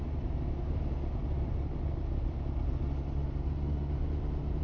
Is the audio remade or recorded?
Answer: recorded